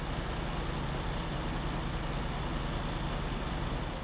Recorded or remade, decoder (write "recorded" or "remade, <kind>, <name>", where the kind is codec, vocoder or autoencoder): recorded